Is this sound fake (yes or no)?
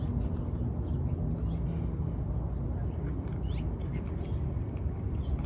no